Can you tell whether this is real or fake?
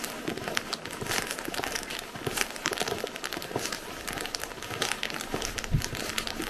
real